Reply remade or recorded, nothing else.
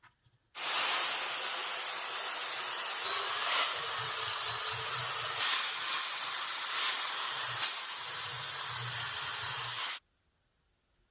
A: recorded